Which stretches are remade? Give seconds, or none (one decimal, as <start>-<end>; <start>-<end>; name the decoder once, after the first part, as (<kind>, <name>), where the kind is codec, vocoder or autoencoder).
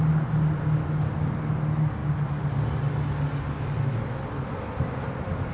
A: none